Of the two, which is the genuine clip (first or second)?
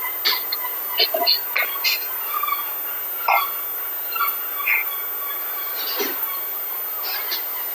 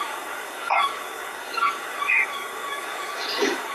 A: first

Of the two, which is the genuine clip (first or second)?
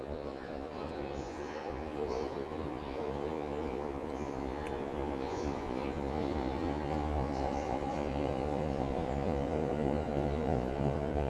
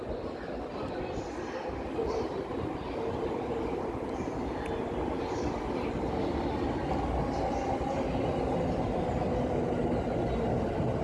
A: second